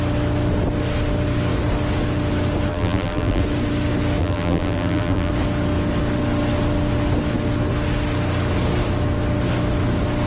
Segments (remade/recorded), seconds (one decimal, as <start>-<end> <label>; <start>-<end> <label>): 0.0-2.7 recorded; 2.7-3.4 remade; 3.4-4.2 recorded; 4.2-5.3 remade; 5.3-10.3 recorded